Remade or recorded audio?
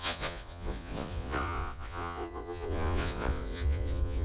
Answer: remade